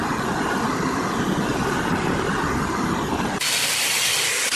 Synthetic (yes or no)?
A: no